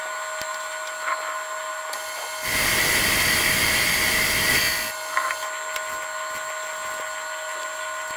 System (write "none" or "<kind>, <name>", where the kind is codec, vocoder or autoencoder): none